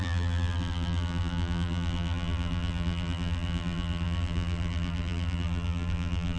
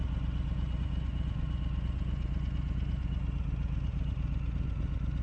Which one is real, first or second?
second